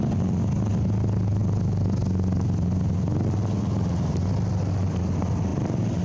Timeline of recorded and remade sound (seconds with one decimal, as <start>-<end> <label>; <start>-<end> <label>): 0.0-6.0 recorded